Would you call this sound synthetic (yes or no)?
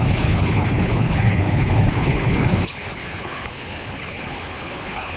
yes